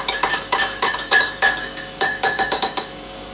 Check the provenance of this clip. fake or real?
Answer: fake